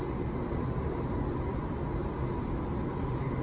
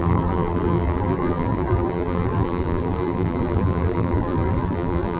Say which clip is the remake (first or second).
second